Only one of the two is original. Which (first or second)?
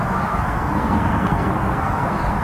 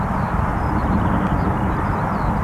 second